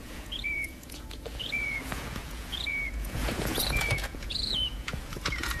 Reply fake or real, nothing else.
fake